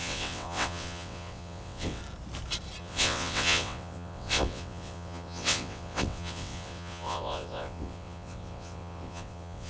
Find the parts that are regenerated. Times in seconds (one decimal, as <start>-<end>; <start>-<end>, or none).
0.0-2.0; 2.8-9.7